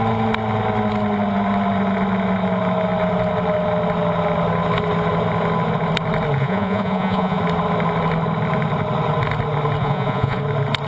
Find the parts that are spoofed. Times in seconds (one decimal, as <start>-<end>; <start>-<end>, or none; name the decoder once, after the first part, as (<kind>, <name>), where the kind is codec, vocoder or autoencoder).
6.4-7.4 (vocoder, Vocos); 9.8-10.4